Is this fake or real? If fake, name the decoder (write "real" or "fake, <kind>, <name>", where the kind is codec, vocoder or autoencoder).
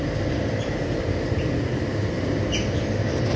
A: real